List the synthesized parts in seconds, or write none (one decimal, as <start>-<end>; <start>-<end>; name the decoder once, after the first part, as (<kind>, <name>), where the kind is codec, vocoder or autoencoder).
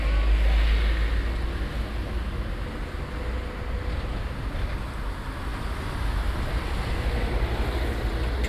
5.5-7.0 (vocoder, BigVGAN v2)